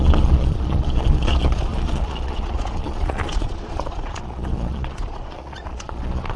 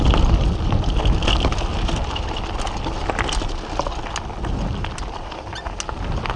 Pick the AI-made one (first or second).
first